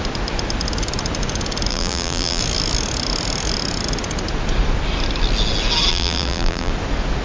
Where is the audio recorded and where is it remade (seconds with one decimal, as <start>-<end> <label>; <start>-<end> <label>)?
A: 0.0-1.7 recorded; 1.7-2.4 remade; 2.4-5.9 recorded; 5.9-6.7 remade; 6.7-7.2 recorded